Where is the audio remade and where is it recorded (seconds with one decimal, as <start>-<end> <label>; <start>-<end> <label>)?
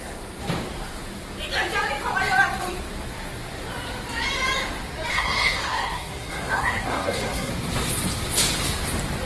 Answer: 0.0-5.1 recorded; 5.1-7.5 remade; 7.5-9.3 recorded